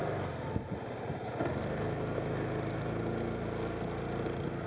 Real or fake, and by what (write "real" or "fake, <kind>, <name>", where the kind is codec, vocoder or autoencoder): real